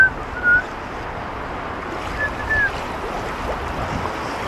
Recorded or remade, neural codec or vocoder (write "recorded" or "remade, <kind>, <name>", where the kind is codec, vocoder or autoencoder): recorded